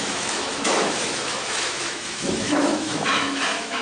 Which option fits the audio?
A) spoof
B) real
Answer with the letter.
A